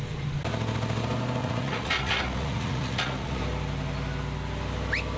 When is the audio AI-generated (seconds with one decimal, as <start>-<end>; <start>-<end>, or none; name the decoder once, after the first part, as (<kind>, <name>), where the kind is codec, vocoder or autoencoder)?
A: 1.4-3.4 (vocoder, Vocos)